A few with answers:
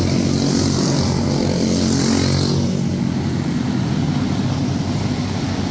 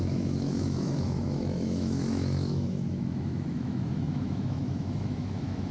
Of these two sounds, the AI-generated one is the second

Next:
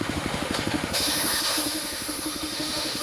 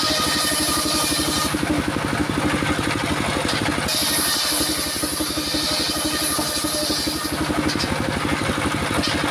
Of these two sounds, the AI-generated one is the first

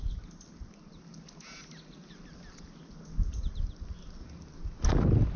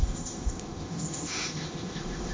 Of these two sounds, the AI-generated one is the second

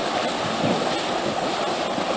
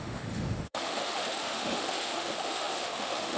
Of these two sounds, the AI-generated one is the second